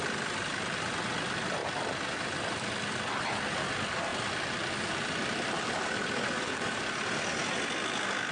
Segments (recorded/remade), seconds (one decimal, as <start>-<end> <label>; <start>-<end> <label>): 0.0-8.3 recorded